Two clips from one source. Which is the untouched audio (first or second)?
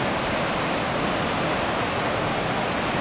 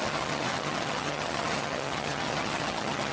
first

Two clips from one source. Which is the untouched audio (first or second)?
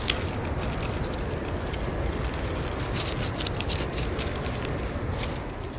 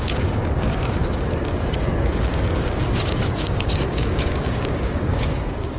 first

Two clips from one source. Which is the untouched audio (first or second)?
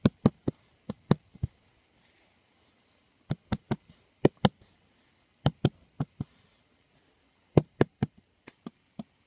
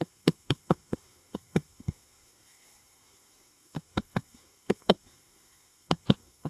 first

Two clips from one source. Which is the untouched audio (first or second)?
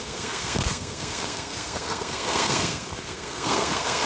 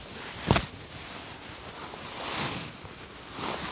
second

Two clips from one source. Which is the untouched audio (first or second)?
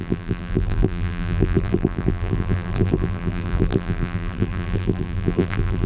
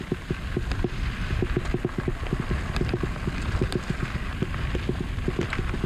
second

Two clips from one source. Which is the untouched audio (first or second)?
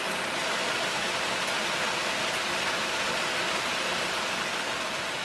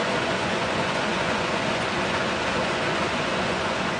first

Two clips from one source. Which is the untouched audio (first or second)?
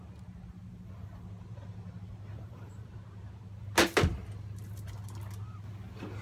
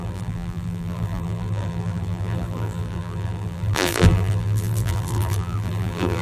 first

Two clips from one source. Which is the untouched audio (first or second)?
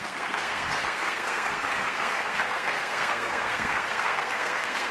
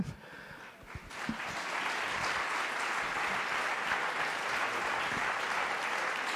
second